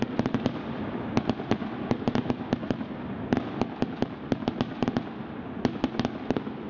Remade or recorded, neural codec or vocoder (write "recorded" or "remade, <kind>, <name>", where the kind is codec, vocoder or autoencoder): recorded